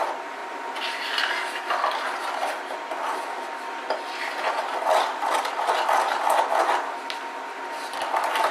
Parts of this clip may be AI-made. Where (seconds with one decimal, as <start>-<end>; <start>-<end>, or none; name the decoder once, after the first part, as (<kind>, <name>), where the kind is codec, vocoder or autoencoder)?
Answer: none